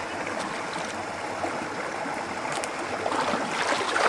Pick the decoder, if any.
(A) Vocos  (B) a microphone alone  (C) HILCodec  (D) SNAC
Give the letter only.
B